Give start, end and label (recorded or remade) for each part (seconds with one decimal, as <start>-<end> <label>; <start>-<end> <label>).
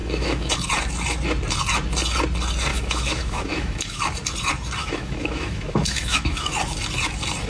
0.0-0.5 remade; 0.5-2.7 recorded; 2.7-4.0 remade; 4.0-4.8 recorded; 4.8-6.5 remade; 6.5-7.5 recorded